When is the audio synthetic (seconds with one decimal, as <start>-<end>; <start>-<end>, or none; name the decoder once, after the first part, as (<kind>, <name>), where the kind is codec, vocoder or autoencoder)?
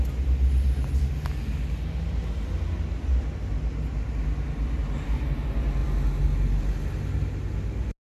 none